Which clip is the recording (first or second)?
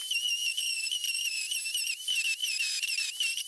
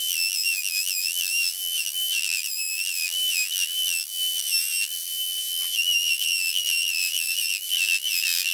first